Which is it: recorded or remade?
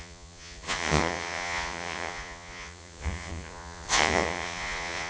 remade